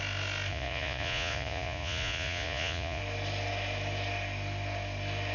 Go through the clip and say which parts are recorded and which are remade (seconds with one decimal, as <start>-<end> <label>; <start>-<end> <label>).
0.0-0.5 recorded; 0.5-3.0 remade; 3.0-5.3 recorded